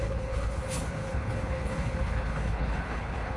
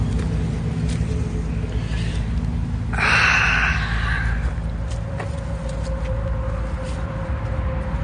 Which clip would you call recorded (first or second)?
second